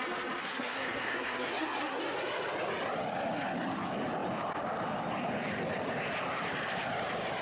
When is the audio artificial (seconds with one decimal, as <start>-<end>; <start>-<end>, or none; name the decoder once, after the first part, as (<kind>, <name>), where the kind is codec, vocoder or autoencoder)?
0.4-2.0 (codec, SNAC)